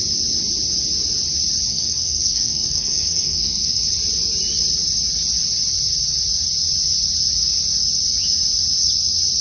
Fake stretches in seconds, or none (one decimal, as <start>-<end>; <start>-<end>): 1.7-3.8